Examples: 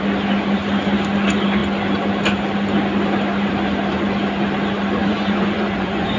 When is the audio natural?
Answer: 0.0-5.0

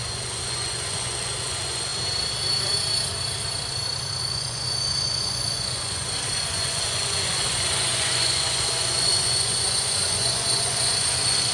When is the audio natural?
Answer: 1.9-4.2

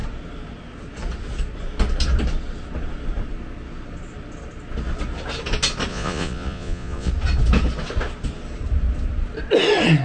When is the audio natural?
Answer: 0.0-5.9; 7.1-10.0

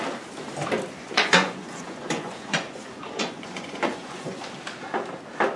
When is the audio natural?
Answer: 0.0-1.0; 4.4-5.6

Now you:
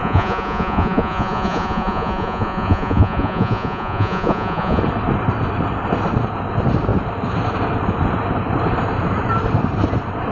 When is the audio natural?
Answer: 4.8-10.3

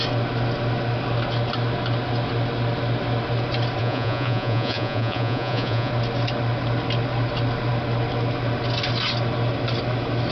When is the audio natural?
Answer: 0.0-3.8; 5.9-10.3